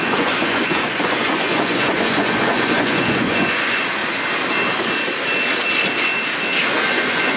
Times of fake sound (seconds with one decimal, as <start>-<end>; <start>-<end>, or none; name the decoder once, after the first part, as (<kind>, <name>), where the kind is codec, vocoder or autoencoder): 0.0-4.0 (vocoder, Vocos); 6.7-7.4